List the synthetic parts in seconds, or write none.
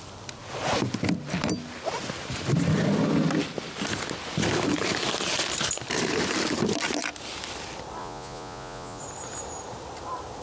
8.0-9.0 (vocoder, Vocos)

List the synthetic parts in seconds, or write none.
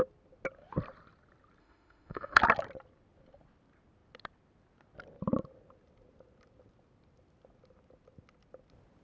1.6-2.4 (autoencoder, DAC-VAE)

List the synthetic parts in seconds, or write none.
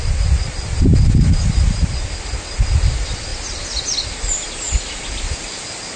none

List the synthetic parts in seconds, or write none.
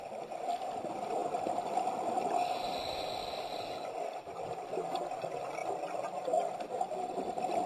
none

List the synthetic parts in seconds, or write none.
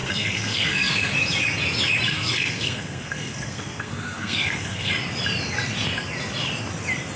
0.0-1.1 (codec, SNAC); 2.1-4.9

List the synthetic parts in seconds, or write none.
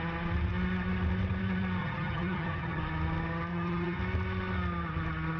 1.8-2.8 (vocoder, HiFi-GAN); 3.5-4.0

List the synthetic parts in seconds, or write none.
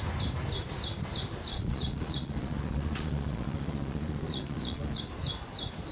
1.5-5.0 (vocoder, Vocos)